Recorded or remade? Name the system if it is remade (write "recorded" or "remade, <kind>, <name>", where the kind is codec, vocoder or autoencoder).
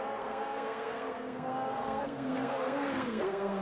remade, codec, SNAC